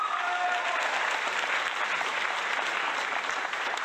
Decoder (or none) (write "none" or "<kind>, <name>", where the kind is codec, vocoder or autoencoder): none